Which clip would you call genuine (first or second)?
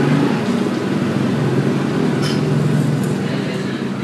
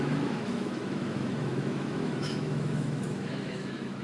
first